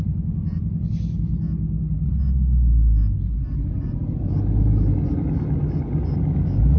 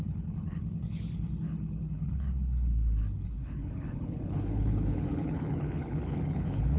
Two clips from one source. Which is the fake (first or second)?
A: second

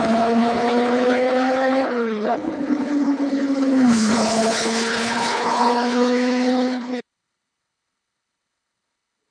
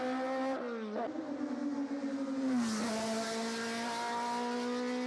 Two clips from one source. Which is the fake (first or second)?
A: first